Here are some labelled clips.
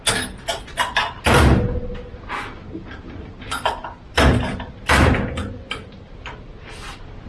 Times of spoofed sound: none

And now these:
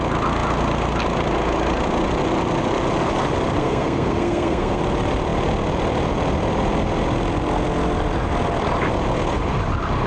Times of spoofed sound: 3.6-4.8

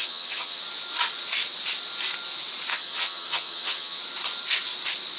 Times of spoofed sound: 0.0-0.6; 2.7-4.0

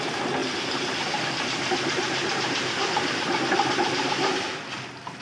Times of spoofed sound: none

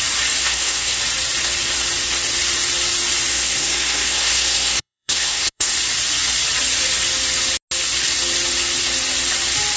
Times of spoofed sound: 0.4-1.0; 3.3-5.7

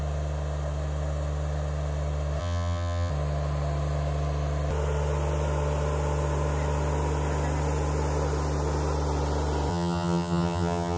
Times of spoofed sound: 2.4-3.1; 9.7-11.0